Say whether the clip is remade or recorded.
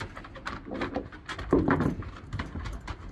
recorded